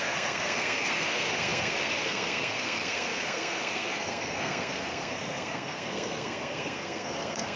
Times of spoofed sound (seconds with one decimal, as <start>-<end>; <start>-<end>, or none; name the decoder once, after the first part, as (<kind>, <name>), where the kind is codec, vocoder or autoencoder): 0.0-7.6 (codec, SNAC)